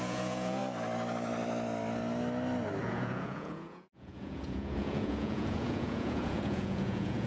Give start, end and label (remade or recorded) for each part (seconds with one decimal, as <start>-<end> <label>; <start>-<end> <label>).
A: 0.0-0.6 remade; 0.6-2.8 recorded; 2.8-7.3 remade